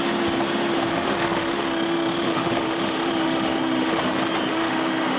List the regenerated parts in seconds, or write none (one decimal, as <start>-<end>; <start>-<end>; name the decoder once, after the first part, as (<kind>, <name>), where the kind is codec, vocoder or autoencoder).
0.9-4.0 (autoencoder, DAC-VAE); 4.5-5.2